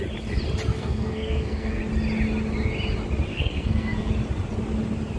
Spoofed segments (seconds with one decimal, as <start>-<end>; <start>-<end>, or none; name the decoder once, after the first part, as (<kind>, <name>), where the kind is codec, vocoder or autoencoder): 0.7-1.8 (codec, SNAC); 3.3-4.1